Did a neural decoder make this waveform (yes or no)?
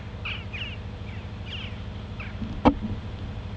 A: no